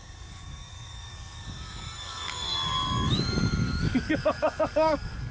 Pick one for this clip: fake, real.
fake